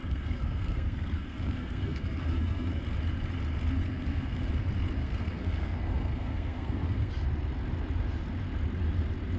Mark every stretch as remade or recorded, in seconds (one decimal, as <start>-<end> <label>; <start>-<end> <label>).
0.0-2.8 remade; 2.8-3.8 recorded; 3.8-4.5 remade; 4.5-5.0 recorded; 5.0-7.1 remade; 7.1-9.4 recorded